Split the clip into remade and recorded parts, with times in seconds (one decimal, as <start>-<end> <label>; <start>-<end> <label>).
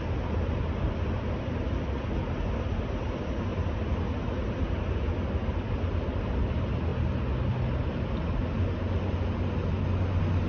0.0-10.5 recorded